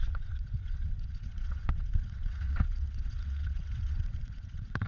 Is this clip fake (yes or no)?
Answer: yes